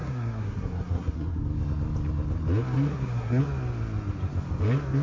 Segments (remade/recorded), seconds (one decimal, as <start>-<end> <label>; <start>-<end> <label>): 0.0-1.4 remade; 1.4-2.9 recorded; 2.9-3.4 remade; 3.4-5.0 recorded